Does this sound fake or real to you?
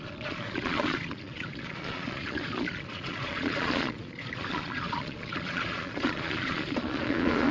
fake